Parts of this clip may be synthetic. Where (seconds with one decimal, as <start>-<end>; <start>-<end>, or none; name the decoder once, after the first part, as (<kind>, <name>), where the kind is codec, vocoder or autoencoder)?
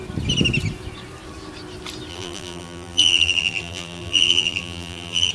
2.1-5.3 (vocoder, BigVGAN v2)